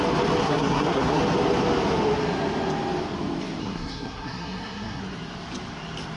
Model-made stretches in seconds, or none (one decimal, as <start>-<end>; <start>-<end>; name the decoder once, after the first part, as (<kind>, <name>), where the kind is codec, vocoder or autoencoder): 0.4-1.2 (codec, SNAC); 3.6-5.0

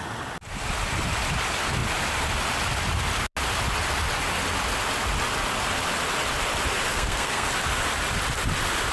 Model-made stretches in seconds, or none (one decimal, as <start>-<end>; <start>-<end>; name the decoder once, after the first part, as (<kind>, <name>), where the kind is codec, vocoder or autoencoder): 6.9-7.5 (codec, SNAC)

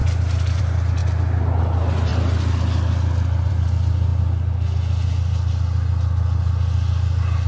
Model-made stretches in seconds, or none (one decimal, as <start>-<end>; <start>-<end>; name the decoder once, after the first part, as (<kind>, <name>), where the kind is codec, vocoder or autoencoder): none

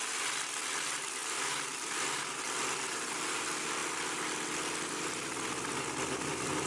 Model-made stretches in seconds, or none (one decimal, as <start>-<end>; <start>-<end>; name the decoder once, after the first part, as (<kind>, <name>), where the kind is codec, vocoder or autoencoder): none

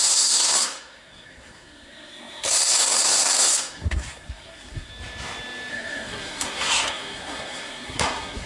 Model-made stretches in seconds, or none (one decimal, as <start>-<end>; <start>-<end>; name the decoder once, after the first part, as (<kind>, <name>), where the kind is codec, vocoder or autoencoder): 0.0-4.9 (codec, SNAC); 5.7-8.5